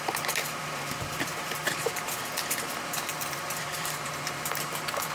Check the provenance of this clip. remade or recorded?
remade